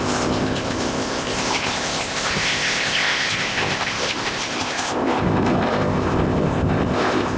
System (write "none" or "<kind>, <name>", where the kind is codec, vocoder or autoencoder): codec, ZipCodec